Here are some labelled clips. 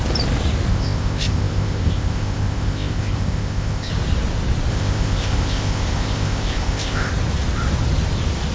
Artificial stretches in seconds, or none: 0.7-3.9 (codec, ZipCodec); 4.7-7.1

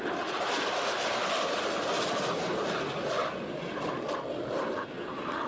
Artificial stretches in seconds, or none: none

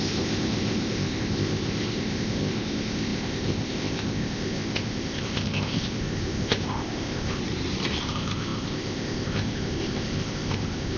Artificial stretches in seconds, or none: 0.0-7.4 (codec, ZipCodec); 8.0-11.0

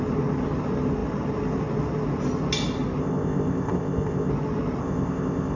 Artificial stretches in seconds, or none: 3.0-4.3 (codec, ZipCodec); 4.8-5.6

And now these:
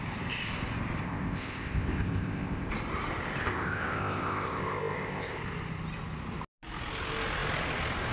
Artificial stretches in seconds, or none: 1.0-2.7 (codec, ZipCodec); 3.4-5.4

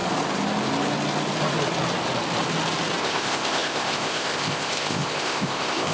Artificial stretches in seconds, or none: 3.0-5.9 (codec, ZipCodec)

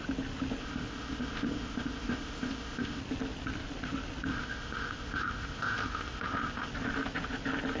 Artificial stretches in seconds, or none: 0.6-3.0 (codec, ZipCodec); 4.3-6.7